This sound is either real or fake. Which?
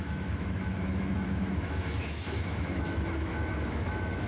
fake